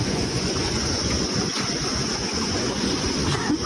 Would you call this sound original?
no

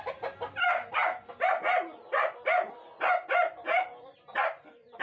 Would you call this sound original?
yes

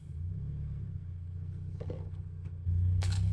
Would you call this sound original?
no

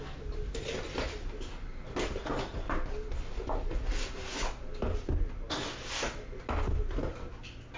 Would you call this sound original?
yes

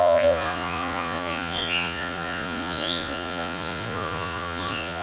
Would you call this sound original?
no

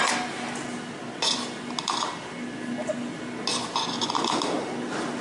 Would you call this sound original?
yes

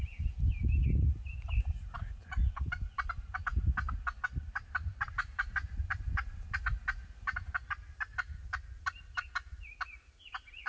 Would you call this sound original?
yes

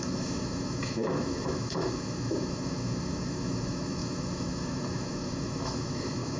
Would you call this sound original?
no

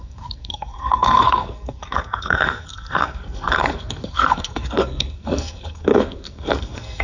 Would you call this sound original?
no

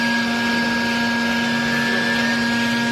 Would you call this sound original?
yes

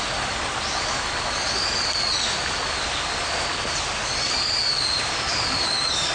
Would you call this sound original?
yes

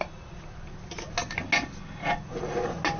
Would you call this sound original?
yes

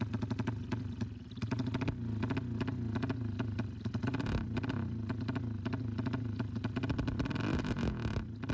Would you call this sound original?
yes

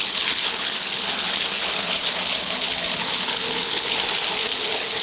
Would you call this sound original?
no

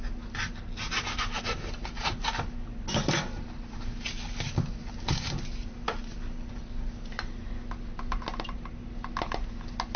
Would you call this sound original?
yes